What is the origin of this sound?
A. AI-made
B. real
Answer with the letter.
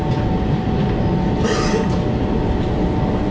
B